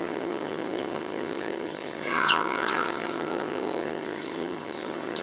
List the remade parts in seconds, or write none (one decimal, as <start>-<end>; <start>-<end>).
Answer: 0.0-5.2